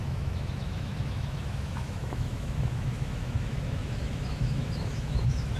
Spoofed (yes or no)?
yes